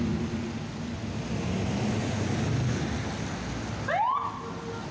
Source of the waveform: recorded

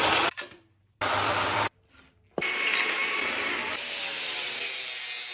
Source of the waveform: recorded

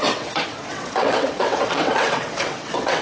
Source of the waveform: remade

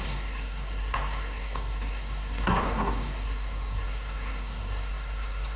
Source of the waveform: remade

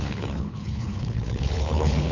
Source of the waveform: remade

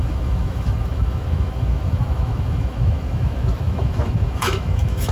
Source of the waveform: remade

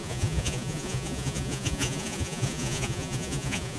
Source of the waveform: remade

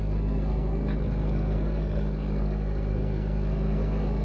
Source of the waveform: remade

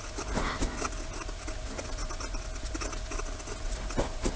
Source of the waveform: recorded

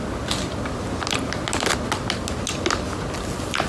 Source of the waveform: recorded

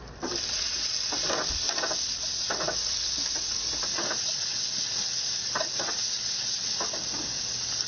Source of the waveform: recorded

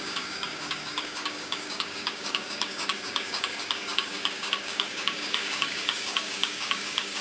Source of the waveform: remade